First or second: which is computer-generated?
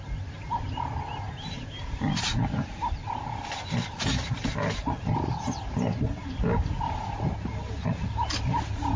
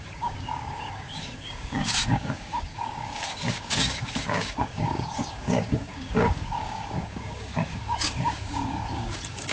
second